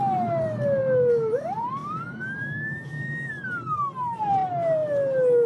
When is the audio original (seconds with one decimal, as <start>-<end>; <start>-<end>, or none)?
0.0-2.4; 3.3-5.5